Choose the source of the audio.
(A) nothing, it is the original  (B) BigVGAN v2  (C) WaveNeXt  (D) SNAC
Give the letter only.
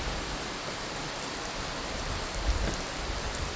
A